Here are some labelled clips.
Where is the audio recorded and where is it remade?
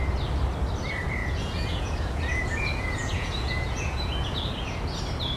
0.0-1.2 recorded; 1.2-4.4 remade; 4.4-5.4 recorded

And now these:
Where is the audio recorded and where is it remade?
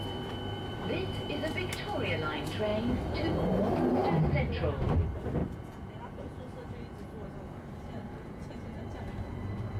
0.0-5.4 recorded; 5.4-8.8 remade; 8.8-9.8 recorded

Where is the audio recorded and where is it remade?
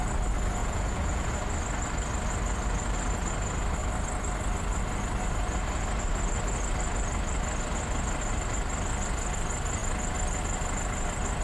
0.0-0.6 recorded; 0.6-1.3 remade; 1.3-11.4 recorded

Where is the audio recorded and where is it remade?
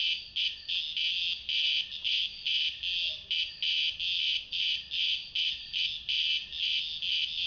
0.0-7.5 recorded